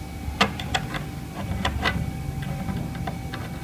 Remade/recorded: recorded